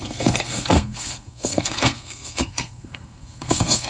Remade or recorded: remade